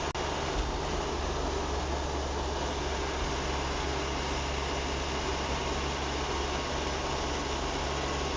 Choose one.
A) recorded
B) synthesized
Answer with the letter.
A